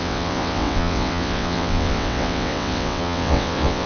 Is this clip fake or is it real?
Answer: fake